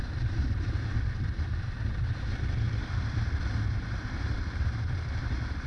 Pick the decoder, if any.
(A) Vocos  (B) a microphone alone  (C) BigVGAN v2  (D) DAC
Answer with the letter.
C